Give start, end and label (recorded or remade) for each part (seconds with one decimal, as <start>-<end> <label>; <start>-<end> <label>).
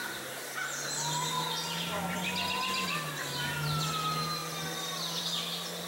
0.0-5.9 recorded